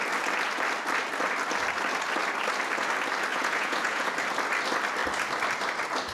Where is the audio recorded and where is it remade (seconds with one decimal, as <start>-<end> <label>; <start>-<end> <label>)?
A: 0.0-3.3 recorded; 3.3-4.1 remade; 4.1-6.1 recorded